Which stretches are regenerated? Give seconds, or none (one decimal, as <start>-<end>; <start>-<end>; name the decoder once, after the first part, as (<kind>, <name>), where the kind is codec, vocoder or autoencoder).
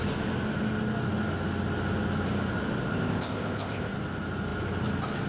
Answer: 2.9-3.9 (codec, ZipCodec)